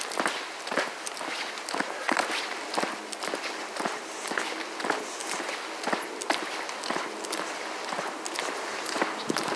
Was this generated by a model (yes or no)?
no